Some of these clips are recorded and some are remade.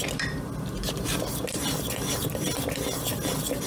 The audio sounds recorded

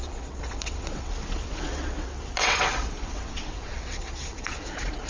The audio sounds remade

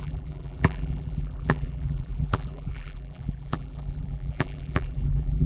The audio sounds remade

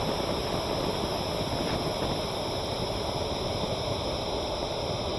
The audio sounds recorded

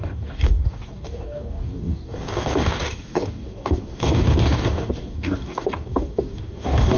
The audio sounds remade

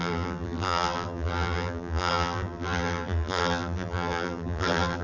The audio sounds remade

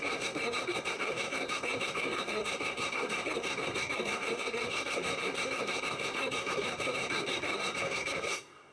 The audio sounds remade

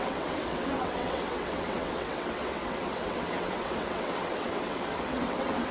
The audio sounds remade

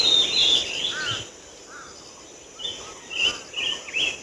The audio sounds recorded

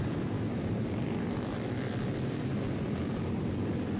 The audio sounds recorded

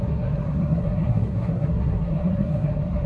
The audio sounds remade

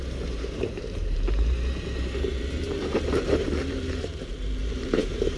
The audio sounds remade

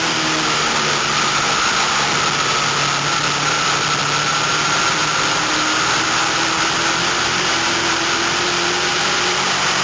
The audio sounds recorded